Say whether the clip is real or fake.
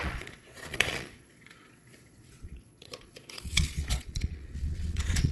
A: fake